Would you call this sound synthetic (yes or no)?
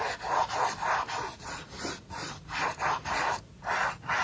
no